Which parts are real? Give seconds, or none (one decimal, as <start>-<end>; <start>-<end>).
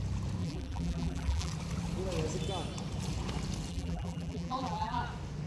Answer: 0.0-0.4; 1.5-3.7; 5.0-5.5